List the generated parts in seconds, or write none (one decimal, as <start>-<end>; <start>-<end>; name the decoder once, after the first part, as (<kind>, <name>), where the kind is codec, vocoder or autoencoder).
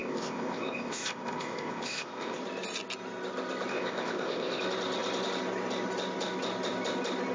0.0-2.4 (codec, ZipCodec); 3.7-4.6